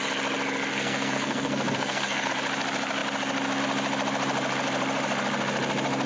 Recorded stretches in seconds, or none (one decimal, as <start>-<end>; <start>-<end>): 0.0-0.7; 2.3-6.1